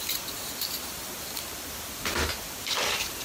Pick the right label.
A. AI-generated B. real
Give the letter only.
B